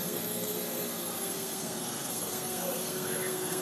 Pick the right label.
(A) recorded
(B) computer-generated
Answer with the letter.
B